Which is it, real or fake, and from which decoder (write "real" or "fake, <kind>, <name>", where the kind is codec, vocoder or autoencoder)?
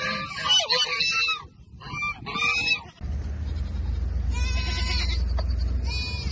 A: real